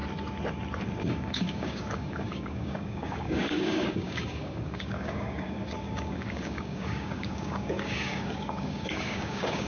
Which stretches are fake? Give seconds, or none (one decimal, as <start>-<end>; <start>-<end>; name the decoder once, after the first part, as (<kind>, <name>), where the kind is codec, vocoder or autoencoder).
1.0-9.7 (codec, DAC)